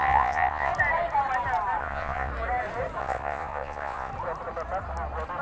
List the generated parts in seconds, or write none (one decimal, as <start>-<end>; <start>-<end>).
0.0-0.7; 1.8-2.3; 3.0-4.1